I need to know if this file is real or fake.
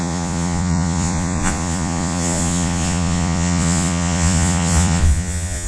fake